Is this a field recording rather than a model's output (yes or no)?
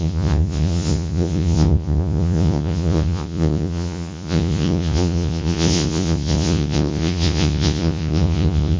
no